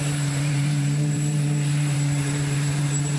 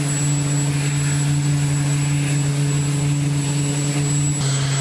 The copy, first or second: first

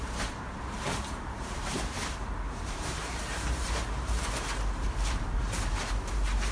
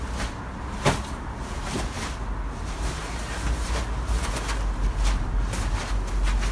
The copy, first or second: first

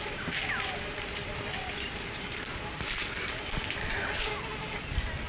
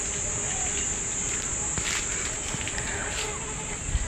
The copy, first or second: first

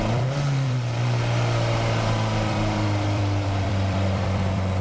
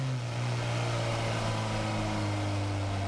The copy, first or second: first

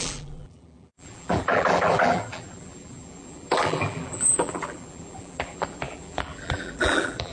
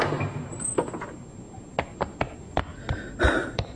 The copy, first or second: first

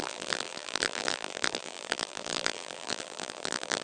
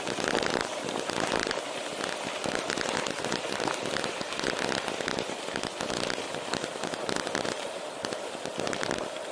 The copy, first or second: first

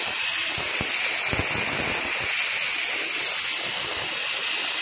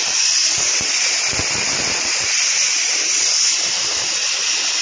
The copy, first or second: second